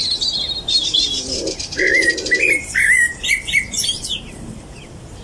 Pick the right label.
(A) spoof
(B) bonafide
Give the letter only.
A